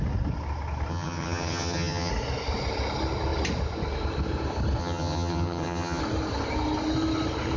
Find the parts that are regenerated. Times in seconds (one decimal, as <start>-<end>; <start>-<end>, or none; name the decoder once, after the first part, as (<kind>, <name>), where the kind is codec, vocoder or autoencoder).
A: 0.9-2.1 (vocoder, HiFi-GAN); 4.8-6.0